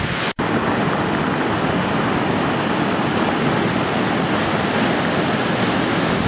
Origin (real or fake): real